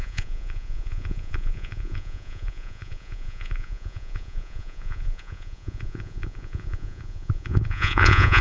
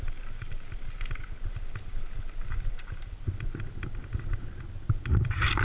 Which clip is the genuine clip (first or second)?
second